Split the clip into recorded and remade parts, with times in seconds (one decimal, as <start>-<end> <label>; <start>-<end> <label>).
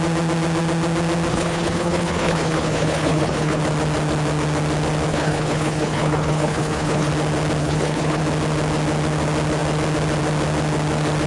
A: 0.0-1.3 recorded; 1.3-3.6 remade; 3.6-5.1 recorded; 5.1-7.1 remade; 7.1-7.6 recorded; 7.6-8.2 remade; 8.2-11.3 recorded